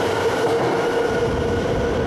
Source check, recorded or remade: recorded